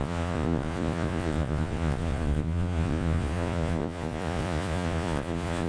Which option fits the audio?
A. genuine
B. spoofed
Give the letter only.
B